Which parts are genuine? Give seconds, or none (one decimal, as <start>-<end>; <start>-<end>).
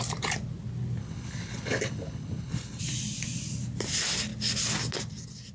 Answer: 0.0-1.0; 2.8-5.5